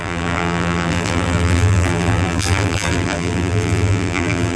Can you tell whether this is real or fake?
fake